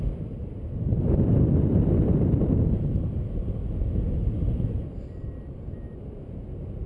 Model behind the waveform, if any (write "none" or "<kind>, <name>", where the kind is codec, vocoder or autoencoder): vocoder, BigVGAN v2